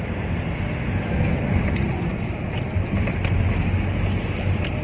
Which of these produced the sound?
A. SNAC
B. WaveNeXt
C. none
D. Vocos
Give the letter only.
C